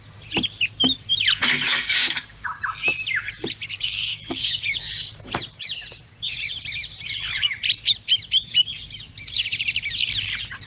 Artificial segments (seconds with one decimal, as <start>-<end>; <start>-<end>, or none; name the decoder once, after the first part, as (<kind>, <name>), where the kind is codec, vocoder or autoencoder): 1.7-2.6 (codec, DAC); 3.7-4.8